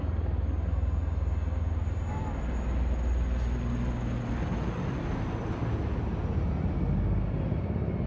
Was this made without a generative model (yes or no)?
yes